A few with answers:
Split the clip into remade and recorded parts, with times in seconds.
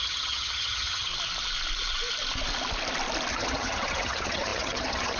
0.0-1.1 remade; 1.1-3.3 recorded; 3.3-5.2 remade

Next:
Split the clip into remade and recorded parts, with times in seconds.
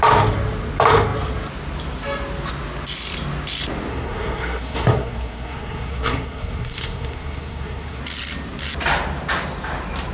0.0-3.9 recorded; 3.9-8.0 remade; 8.0-10.1 recorded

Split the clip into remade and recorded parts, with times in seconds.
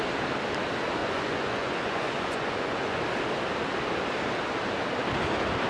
0.0-1.0 recorded; 1.0-3.0 remade; 3.0-5.7 recorded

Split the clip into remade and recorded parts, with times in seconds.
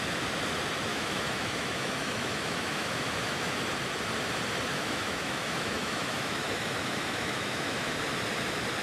0.0-0.9 recorded; 0.9-3.6 remade; 3.6-4.7 recorded; 4.7-8.0 remade; 8.0-8.8 recorded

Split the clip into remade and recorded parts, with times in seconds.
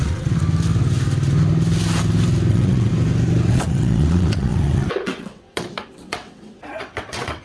0.0-0.4 remade; 0.4-2.5 recorded; 2.5-2.9 remade; 2.9-3.5 recorded; 3.5-7.4 remade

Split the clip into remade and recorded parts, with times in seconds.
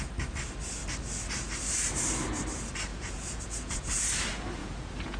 0.0-2.9 recorded; 2.9-4.1 remade; 4.1-4.6 recorded; 4.6-5.2 remade